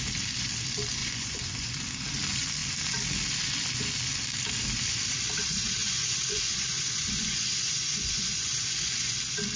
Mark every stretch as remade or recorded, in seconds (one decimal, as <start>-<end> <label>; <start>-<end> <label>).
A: 0.0-1.0 recorded; 1.0-1.7 remade; 1.7-5.8 recorded; 5.8-9.2 remade; 9.2-9.6 recorded